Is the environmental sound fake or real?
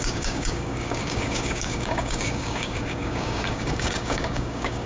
fake